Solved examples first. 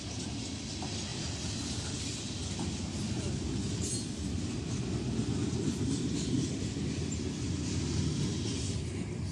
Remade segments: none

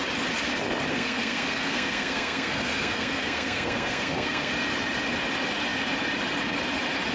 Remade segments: 0.9-4.5 (codec, SNAC)

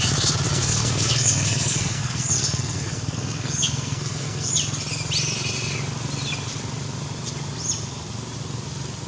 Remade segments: 0.5-4.5 (codec, SNAC)

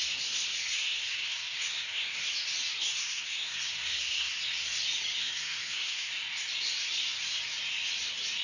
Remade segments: 0.0-2.3 (codec, SNAC); 2.8-4.3; 5.2-6.1

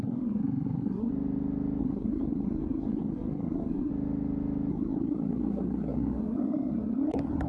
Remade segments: 0.0-1.1 (codec, SNAC); 1.8-3.9; 4.7-7.5

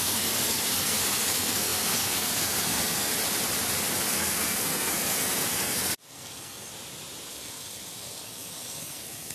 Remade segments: 0.0-3.1 (codec, SNAC); 4.1-6.7; 7.3-9.3